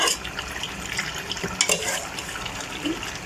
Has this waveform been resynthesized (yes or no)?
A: no